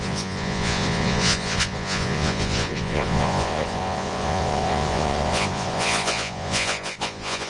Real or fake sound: fake